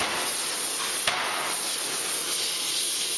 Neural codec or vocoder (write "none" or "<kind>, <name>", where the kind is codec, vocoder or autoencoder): none